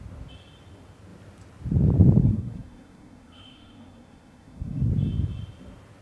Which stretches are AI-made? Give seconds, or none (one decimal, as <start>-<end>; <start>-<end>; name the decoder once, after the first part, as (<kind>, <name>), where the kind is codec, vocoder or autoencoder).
2.2-4.9 (codec, SNAC)